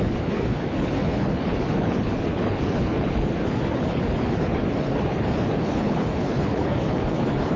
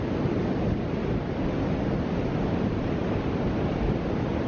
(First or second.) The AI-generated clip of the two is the first